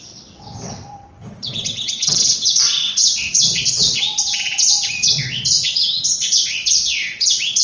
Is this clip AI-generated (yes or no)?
yes